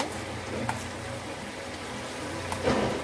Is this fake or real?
real